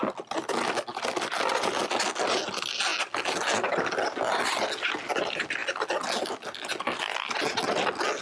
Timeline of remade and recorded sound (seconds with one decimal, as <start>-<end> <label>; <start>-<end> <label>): 0.0-8.2 recorded